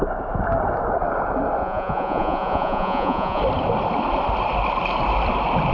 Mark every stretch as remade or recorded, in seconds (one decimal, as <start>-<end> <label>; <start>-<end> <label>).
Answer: 0.0-1.6 recorded; 1.6-3.4 remade; 3.4-5.7 recorded